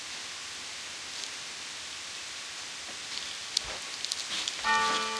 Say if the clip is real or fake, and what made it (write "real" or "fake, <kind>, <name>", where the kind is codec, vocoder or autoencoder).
real